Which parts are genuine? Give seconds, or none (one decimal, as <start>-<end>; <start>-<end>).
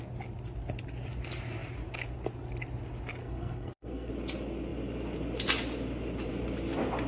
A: 0.0-3.2; 4.1-7.1